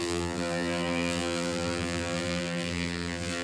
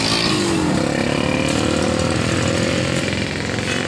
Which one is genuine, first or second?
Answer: second